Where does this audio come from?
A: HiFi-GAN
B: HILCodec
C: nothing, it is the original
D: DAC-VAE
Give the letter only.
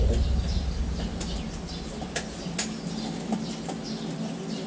C